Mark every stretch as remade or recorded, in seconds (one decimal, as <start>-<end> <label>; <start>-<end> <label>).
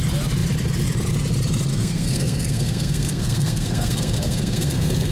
0.0-1.7 recorded; 1.7-5.1 remade